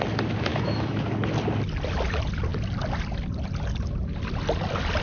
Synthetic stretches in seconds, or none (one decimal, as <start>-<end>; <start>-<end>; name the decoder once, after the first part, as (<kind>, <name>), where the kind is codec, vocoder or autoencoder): 0.5-1.0 (autoencoder, DAC-VAE)